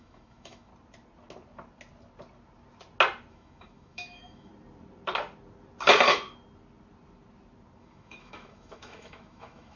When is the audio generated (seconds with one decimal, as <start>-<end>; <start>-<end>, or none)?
0.0-0.7; 3.3-4.5; 7.8-9.8